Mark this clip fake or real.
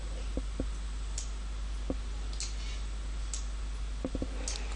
real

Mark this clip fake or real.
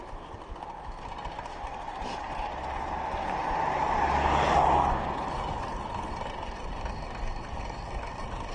real